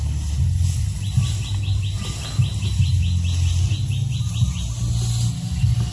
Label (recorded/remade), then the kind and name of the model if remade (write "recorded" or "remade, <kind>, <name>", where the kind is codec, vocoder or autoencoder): recorded